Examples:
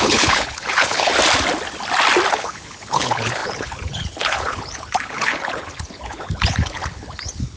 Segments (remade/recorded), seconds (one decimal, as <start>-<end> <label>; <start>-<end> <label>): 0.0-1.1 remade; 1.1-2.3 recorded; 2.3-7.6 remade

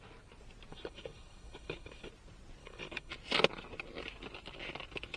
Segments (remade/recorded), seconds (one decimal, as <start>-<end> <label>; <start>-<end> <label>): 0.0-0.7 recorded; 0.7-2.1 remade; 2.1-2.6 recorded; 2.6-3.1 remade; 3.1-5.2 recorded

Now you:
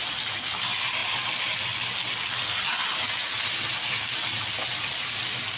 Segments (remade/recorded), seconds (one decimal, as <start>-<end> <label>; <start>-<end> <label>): 0.0-5.6 recorded